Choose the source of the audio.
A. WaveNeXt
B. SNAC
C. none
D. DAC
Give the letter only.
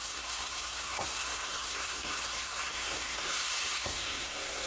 B